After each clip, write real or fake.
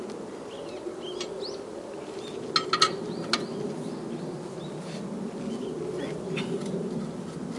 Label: real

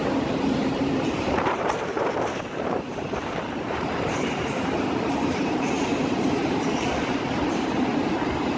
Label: fake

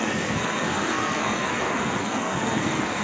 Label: fake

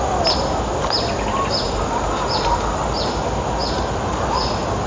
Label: real